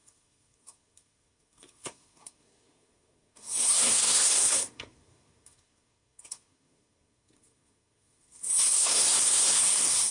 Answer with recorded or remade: remade